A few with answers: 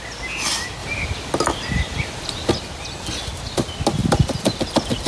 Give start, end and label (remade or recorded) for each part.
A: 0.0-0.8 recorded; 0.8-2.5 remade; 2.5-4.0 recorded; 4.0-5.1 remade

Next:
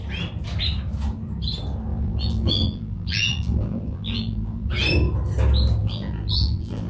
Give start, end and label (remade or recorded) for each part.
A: 0.0-1.9 recorded; 1.9-4.7 remade; 4.7-5.8 recorded; 5.8-6.9 remade

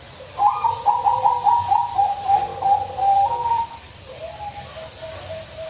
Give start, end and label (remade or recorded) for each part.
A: 0.0-2.5 remade; 2.5-3.5 recorded; 3.5-5.7 remade

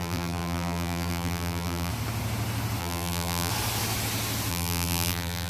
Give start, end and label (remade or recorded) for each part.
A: 0.0-1.9 remade; 1.9-2.8 recorded; 2.8-3.5 remade; 3.5-4.5 recorded; 4.5-5.5 remade

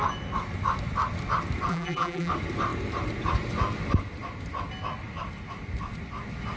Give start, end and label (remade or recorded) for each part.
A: 0.0-1.7 recorded; 1.7-2.3 remade; 2.3-6.6 recorded

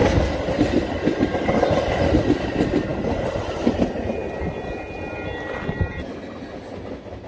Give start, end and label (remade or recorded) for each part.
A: 0.0-7.3 recorded